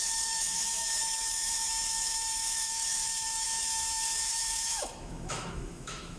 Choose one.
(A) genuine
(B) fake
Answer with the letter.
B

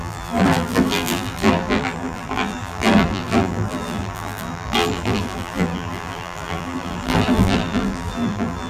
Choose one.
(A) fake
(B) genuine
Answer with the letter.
A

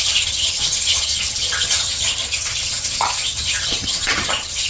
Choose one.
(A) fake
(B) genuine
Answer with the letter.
A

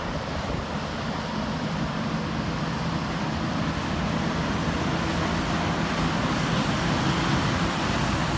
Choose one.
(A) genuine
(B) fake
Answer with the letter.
A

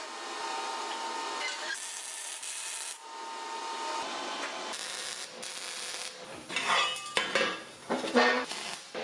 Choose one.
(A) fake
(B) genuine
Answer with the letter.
B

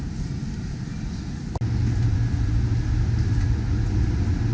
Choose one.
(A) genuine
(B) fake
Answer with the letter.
A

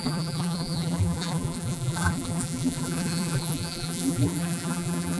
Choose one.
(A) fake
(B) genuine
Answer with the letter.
A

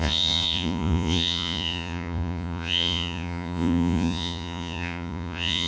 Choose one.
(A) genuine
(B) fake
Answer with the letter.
B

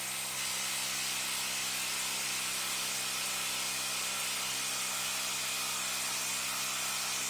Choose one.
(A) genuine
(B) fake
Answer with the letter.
A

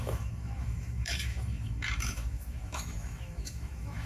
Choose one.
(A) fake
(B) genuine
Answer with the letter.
A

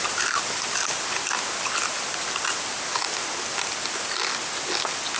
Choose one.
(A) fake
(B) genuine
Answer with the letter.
B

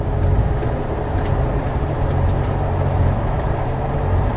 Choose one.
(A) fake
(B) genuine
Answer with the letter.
A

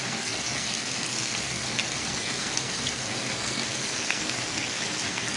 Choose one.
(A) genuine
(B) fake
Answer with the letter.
B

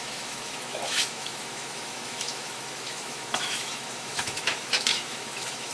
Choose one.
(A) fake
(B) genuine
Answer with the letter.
A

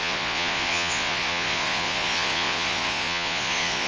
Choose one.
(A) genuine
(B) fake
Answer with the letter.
B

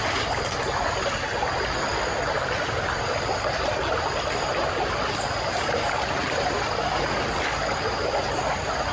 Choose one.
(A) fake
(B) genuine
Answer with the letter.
B